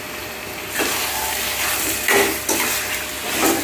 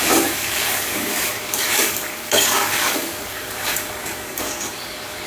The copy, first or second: second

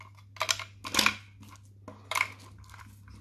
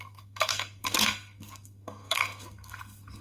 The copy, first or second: second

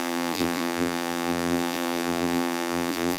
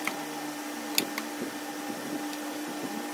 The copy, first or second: first